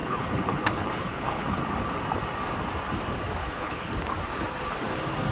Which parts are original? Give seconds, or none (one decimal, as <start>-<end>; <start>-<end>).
1.6-3.4; 3.9-5.3